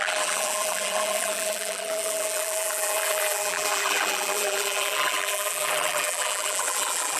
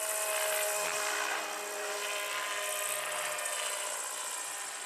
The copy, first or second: first